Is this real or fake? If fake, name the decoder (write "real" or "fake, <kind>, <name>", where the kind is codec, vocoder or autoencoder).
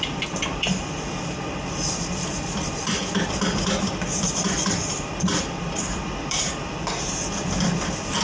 fake, vocoder, BigVGAN v2